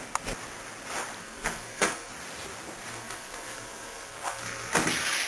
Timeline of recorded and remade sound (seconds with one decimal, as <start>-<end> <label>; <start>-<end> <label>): 0.0-1.2 recorded; 1.2-2.1 remade; 2.1-2.9 recorded; 2.9-4.7 remade; 4.7-5.3 recorded